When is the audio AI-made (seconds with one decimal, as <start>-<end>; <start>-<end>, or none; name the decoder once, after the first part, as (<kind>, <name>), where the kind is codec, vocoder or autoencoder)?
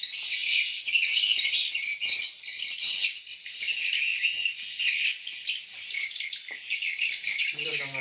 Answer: none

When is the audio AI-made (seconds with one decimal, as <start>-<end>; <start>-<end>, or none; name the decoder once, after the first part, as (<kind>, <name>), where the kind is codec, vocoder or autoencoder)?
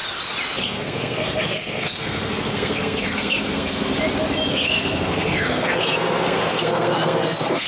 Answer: 0.6-3.9 (codec, SNAC); 4.5-7.7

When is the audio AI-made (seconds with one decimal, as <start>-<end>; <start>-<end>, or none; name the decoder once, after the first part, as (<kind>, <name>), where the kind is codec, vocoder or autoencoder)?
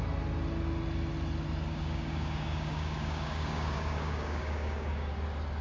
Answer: 1.7-5.1 (codec, DAC)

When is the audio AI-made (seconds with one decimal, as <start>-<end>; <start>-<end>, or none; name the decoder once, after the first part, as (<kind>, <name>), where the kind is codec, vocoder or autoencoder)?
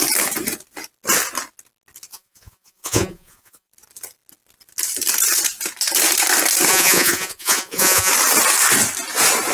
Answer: 2.1-3.7 (vocoder, Vocos); 6.7-8.1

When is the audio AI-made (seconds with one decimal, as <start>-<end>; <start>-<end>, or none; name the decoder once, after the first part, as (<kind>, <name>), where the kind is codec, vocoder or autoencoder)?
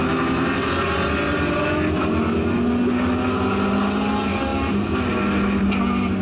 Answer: none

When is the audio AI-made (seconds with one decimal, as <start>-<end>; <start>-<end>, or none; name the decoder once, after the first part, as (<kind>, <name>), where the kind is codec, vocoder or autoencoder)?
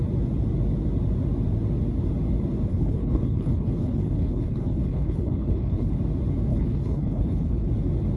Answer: 2.7-5.9 (codec, HILCodec); 6.5-7.7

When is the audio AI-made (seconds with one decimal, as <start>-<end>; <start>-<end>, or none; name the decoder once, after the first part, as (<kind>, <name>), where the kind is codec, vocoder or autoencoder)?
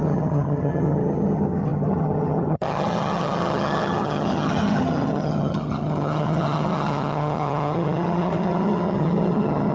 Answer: 0.0-9.7 (vocoder, HiFi-GAN)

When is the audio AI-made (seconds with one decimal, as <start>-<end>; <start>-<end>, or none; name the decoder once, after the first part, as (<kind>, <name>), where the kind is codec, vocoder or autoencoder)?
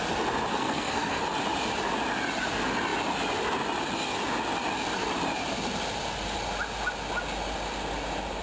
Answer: 0.5-1.2 (codec, SNAC)